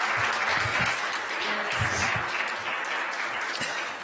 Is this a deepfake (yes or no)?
no